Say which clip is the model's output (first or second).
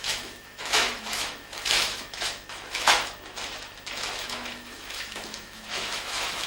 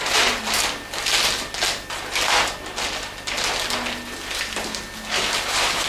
first